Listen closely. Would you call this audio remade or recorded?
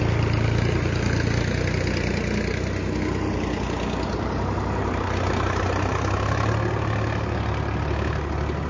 recorded